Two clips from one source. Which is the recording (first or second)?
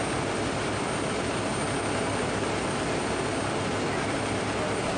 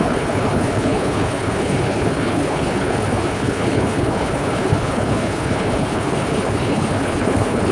first